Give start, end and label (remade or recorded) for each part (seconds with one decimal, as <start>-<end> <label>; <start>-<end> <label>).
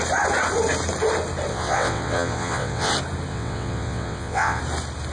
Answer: 0.0-1.5 recorded; 1.5-2.9 remade; 2.9-3.3 recorded; 3.3-4.6 remade; 4.6-5.1 recorded